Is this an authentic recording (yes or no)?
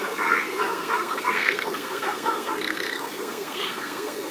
no